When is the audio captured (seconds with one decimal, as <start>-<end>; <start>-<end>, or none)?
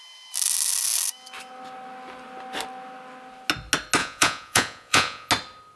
0.0-4.0; 5.3-5.8